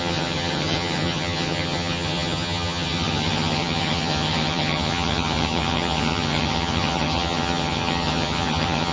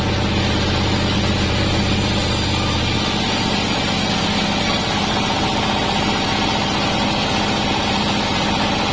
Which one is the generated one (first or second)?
first